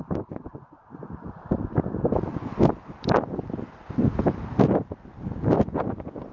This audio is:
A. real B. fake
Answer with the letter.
A